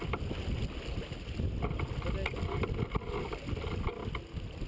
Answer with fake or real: real